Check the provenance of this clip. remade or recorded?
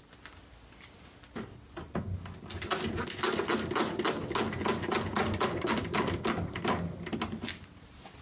recorded